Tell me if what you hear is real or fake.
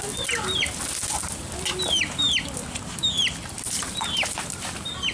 real